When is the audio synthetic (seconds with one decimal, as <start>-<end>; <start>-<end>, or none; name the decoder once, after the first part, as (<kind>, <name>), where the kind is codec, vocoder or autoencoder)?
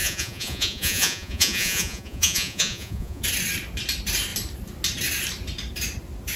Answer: 0.0-3.2 (vocoder, Vocos)